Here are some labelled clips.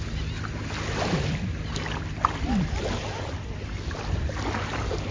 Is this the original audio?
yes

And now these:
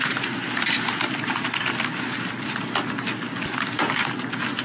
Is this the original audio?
yes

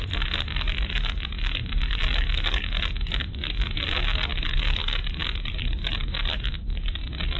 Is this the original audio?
yes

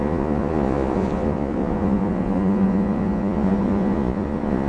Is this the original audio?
no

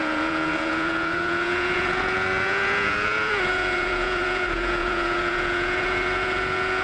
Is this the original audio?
no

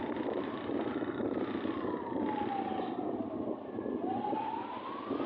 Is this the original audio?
yes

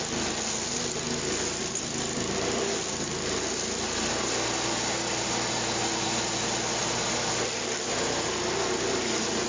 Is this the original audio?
yes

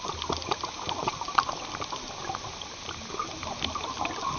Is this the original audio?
yes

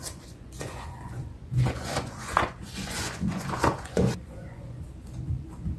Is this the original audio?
no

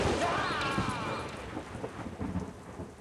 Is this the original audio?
yes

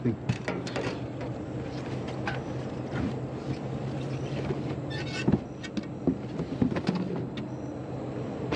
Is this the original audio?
yes